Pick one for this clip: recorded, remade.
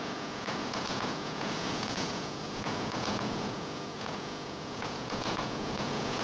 remade